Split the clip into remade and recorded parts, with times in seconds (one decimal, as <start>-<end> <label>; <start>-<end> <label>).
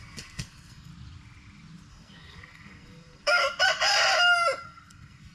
0.0-0.9 remade; 0.9-1.9 recorded; 1.9-3.4 remade; 3.4-4.6 recorded; 4.6-5.3 remade